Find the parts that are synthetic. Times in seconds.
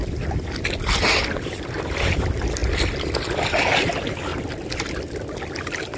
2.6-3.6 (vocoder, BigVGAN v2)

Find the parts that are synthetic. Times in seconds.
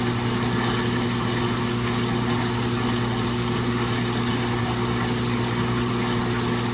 none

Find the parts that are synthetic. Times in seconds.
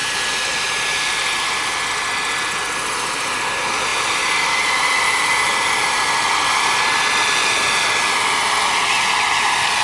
1.9-9.8 (vocoder, BigVGAN v2)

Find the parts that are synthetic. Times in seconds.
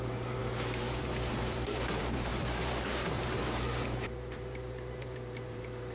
0.0-5.9 (vocoder, BigVGAN v2)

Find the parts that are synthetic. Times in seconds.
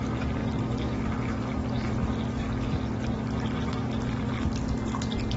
none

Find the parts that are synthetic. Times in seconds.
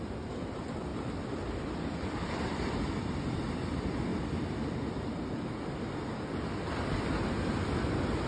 0.9-1.6 (vocoder, BigVGAN v2)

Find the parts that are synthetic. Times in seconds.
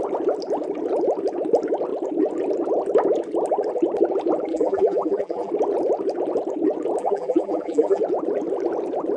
4.5-5.5 (vocoder, BigVGAN v2); 7.0-8.0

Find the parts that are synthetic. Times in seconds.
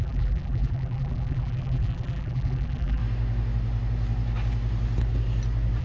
0.0-3.0 (vocoder, BigVGAN v2)